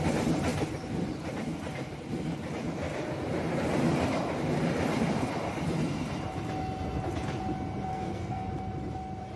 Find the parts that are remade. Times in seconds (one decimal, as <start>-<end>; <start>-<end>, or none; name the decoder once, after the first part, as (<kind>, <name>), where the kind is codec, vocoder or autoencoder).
7.9-8.5 (codec, SNAC)